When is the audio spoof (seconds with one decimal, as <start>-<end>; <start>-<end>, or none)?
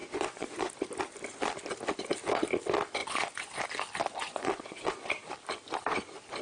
0.0-0.7; 3.0-3.6; 4.1-5.0